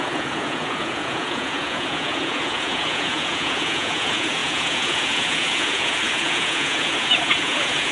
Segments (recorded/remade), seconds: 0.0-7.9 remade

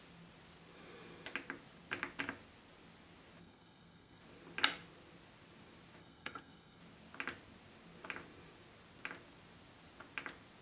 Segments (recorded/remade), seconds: 0.0-3.4 recorded; 3.4-4.2 remade; 4.2-6.0 recorded; 6.0-6.8 remade; 6.8-10.6 recorded

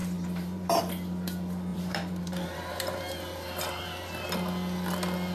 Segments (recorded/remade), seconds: 0.0-0.8 remade; 0.8-1.7 recorded; 1.7-3.8 remade; 3.8-5.3 recorded

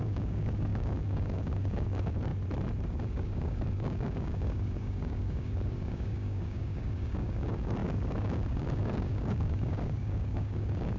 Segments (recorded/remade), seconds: 0.0-2.3 remade; 2.3-2.9 recorded; 2.9-11.0 remade

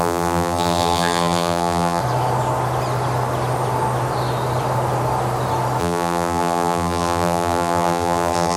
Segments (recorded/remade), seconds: 0.0-2.0 remade; 2.0-5.8 recorded; 5.8-8.6 remade

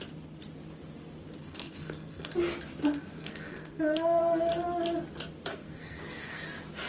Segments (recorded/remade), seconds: 0.0-1.4 recorded; 1.4-2.3 remade; 2.3-3.2 recorded; 3.2-4.2 remade; 4.2-5.5 recorded; 5.5-6.4 remade; 6.4-6.9 recorded

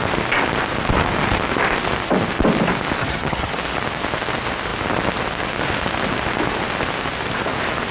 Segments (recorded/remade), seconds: 0.0-3.0 recorded; 3.0-3.5 remade; 3.5-7.9 recorded